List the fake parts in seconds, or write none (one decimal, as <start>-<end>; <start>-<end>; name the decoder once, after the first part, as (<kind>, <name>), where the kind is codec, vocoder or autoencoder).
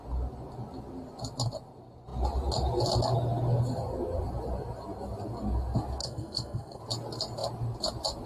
6.0-6.8 (codec, SNAC)